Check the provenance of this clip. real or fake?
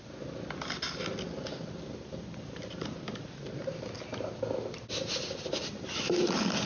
real